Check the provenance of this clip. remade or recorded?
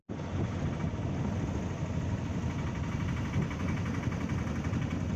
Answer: recorded